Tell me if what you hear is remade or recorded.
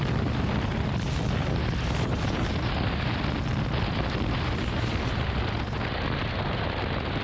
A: recorded